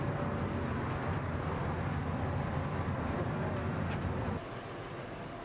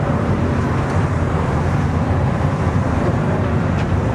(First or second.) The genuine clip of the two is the first